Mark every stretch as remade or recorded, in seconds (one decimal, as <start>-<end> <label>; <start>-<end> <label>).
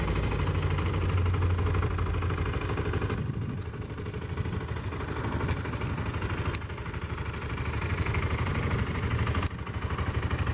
0.0-10.5 recorded